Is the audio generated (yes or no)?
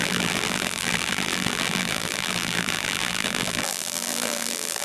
yes